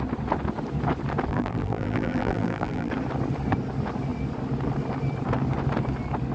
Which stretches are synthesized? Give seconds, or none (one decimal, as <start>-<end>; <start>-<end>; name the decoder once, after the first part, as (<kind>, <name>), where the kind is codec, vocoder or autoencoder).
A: 1.3-2.9 (vocoder, BigVGAN v2)